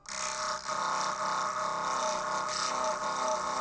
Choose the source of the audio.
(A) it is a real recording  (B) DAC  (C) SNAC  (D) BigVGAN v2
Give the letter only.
A